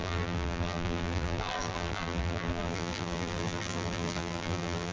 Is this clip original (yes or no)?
no